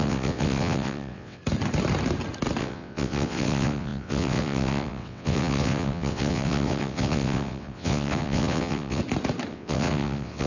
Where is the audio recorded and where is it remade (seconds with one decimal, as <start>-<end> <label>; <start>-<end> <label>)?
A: 0.0-1.4 remade; 1.4-2.6 recorded; 2.6-9.0 remade; 9.0-9.5 recorded; 9.5-10.5 remade